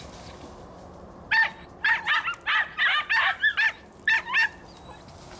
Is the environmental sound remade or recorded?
recorded